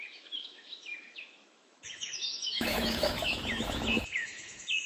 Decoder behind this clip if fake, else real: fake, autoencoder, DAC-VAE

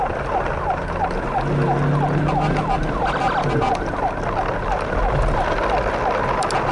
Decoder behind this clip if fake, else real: real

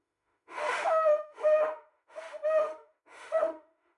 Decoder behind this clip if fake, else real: fake, autoencoder, DAC-VAE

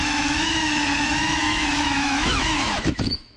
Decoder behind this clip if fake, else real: fake, autoencoder, DAC-VAE